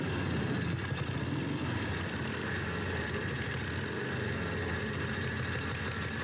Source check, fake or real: real